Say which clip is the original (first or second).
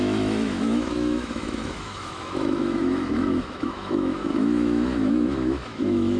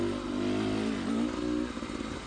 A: second